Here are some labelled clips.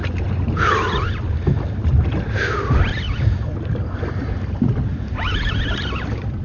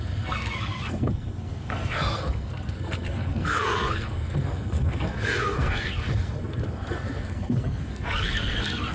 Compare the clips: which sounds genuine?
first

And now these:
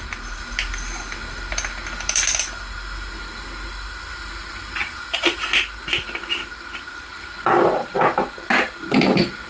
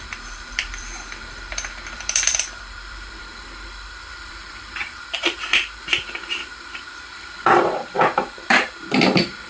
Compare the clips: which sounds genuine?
first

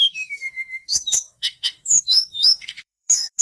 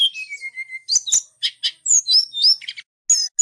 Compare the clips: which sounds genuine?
second